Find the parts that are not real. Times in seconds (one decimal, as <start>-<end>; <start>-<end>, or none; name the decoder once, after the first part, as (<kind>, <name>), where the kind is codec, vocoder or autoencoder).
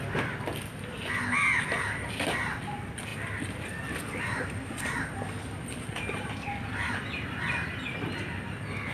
3.1-8.0 (vocoder, BigVGAN v2)